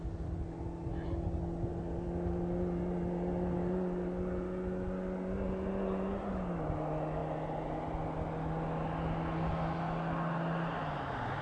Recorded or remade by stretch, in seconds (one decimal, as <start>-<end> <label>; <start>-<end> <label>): 0.0-11.4 recorded